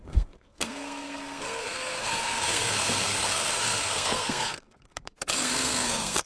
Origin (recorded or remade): remade